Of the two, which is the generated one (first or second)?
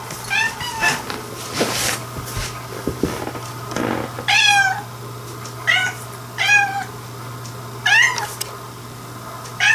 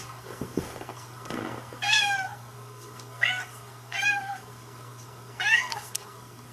second